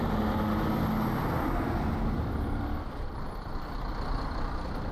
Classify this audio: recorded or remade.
recorded